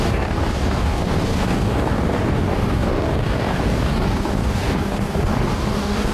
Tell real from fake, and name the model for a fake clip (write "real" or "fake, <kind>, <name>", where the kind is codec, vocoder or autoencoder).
fake, codec, DAC